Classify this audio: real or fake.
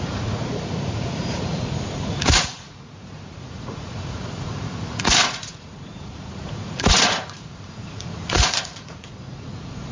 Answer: fake